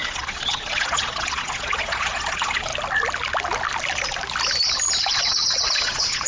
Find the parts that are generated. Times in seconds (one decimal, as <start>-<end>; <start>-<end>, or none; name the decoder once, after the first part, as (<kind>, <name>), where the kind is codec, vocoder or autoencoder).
0.0-2.7 (vocoder, Vocos); 5.0-6.3

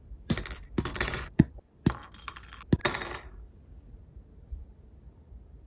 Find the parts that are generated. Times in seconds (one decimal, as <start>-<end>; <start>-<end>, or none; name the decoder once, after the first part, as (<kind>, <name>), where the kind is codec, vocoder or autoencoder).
0.9-1.5 (vocoder, Vocos)

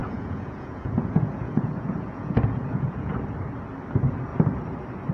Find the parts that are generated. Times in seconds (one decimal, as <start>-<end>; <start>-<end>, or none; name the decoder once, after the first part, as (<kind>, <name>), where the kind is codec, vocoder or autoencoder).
0.0-3.1 (vocoder, Vocos)

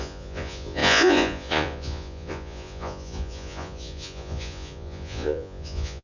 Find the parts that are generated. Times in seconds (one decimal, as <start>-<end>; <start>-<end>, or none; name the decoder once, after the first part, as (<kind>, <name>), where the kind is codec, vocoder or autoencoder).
0.0-6.0 (vocoder, Vocos)